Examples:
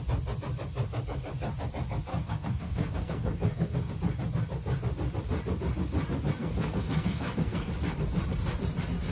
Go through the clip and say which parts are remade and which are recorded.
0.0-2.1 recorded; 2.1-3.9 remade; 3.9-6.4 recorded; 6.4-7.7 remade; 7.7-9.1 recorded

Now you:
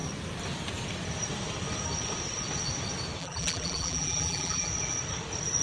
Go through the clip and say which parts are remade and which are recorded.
0.0-3.2 recorded; 3.2-4.7 remade; 4.7-5.6 recorded

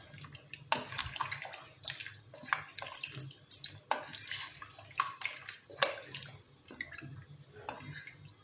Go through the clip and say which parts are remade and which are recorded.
0.0-8.4 recorded